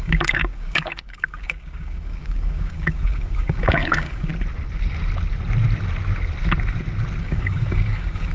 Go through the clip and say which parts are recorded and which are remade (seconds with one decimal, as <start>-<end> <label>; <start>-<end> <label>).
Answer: 0.0-4.3 remade; 4.3-7.2 recorded; 7.2-8.3 remade